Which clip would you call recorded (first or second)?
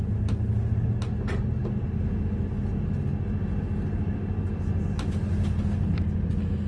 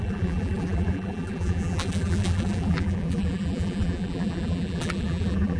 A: first